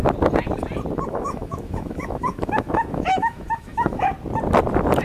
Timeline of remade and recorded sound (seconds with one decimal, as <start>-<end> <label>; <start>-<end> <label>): 0.0-1.1 recorded; 1.1-4.1 remade; 4.1-5.0 recorded